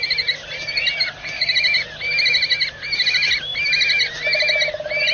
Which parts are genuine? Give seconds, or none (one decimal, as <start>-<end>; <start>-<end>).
0.0-5.1